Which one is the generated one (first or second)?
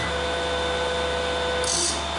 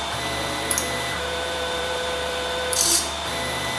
second